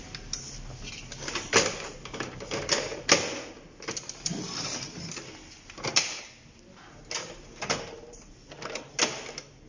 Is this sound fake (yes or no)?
no